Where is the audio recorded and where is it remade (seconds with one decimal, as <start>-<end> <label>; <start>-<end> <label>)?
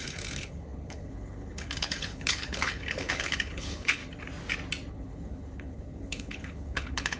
0.0-4.0 remade; 4.0-4.9 recorded; 4.9-7.2 remade